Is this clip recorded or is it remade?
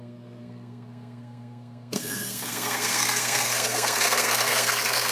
remade